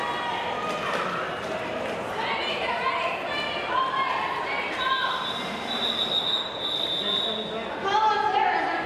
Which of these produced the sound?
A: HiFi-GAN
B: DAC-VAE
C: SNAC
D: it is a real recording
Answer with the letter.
D